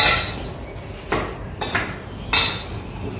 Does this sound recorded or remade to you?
recorded